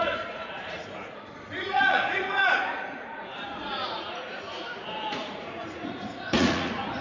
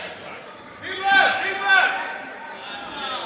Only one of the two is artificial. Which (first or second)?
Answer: first